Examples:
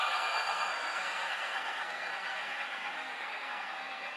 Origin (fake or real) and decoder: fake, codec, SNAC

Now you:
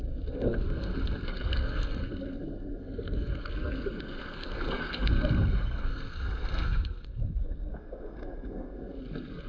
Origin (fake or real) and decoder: fake, codec, SNAC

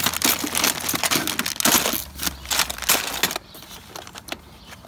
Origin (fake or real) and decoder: real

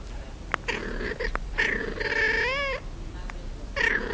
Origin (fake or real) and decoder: real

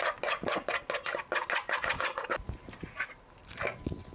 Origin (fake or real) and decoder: real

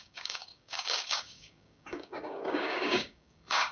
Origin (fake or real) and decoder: fake, codec, DAC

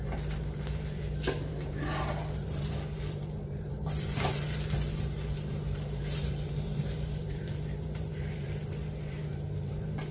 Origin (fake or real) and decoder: fake, vocoder, BigVGAN v2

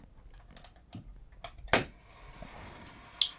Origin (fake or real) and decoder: real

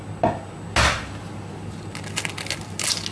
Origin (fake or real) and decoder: real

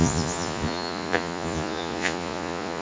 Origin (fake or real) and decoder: fake, vocoder, Vocos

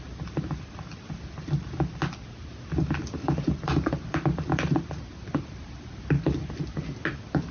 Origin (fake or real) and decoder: real